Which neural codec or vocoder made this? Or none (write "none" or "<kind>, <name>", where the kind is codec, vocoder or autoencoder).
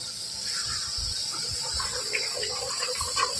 vocoder, Vocos